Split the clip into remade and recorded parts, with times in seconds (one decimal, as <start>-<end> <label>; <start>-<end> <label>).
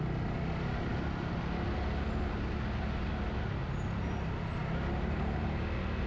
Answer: 0.0-6.1 recorded